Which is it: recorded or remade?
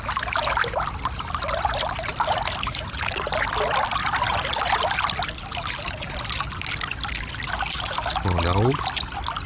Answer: recorded